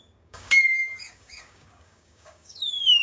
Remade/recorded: remade